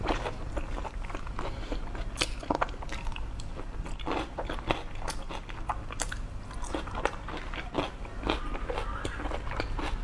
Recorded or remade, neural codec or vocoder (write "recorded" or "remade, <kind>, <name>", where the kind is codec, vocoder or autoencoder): recorded